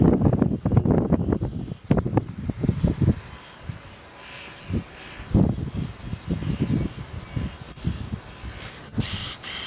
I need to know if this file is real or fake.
real